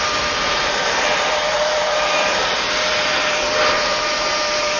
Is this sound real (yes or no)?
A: no